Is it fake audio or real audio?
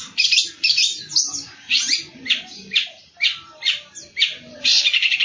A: fake